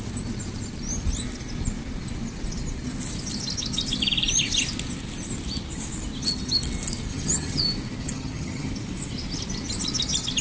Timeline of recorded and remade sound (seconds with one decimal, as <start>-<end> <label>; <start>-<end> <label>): 0.0-7.1 recorded; 7.1-7.6 remade; 7.6-8.0 recorded; 8.0-8.7 remade; 8.7-10.4 recorded